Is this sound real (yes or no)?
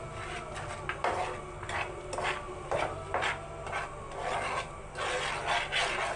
yes